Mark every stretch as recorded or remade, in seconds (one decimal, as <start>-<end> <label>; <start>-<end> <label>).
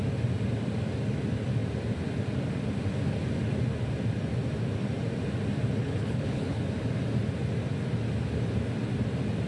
0.0-5.8 recorded; 5.8-6.6 remade; 6.6-9.5 recorded